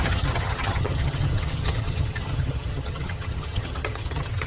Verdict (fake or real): fake